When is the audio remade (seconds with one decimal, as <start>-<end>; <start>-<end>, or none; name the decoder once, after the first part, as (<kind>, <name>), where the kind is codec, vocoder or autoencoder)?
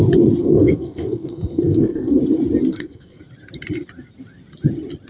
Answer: 0.4-2.2 (codec, SNAC); 2.7-3.2